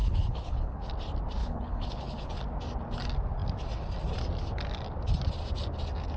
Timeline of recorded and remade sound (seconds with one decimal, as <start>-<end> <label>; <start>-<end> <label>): 0.0-0.9 remade; 0.9-1.4 recorded; 1.4-2.3 remade; 2.3-6.2 recorded